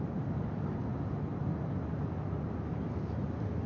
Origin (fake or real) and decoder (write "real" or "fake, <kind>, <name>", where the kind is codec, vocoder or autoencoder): real